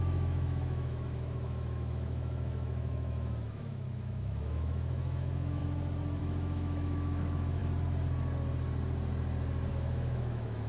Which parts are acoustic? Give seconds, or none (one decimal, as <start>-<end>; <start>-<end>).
5.6-6.2; 7.6-9.7